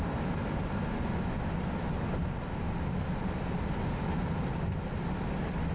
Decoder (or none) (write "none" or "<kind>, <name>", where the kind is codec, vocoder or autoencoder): none